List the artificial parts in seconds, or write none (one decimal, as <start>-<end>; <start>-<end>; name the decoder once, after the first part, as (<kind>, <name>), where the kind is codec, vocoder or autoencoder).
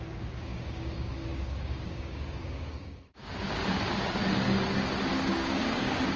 0.0-3.2 (codec, DAC); 5.3-6.2